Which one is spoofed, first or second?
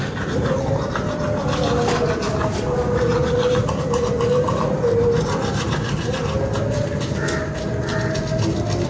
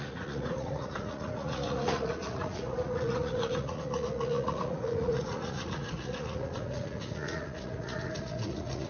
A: second